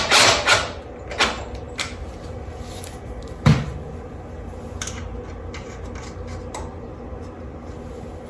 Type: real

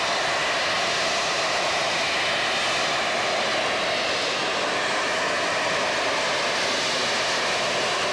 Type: real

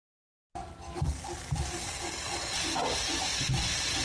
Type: real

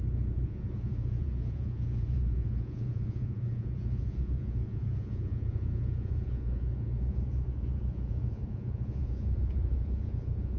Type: fake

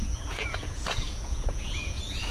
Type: fake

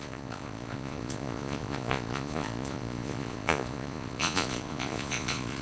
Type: fake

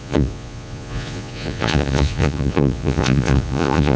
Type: fake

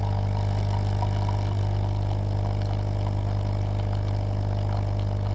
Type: real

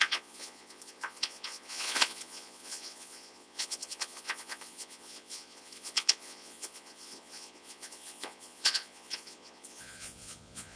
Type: fake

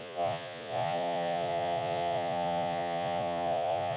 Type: fake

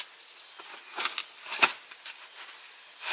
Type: real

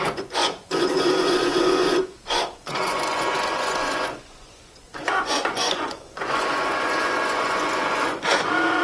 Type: fake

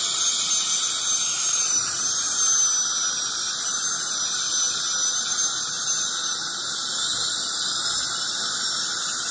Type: real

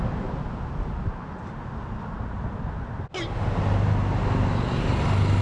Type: real